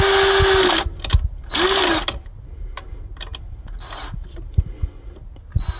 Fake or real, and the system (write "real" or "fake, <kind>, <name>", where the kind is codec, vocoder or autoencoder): real